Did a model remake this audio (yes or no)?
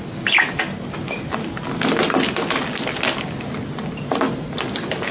no